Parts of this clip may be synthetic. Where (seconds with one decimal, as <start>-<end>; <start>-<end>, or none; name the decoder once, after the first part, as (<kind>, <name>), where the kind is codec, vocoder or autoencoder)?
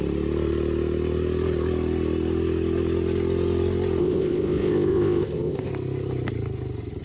4.0-5.7 (codec, ZipCodec)